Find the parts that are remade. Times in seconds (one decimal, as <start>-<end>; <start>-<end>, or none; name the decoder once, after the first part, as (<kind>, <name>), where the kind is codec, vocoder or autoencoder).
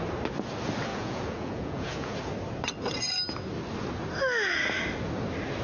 0.9-2.1 (vocoder, Vocos)